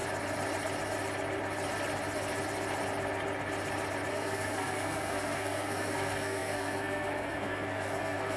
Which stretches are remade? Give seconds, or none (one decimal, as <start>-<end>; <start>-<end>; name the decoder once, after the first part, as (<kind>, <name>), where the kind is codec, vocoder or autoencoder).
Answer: 4.1-8.4 (codec, SNAC)